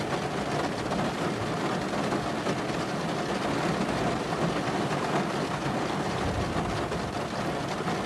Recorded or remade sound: recorded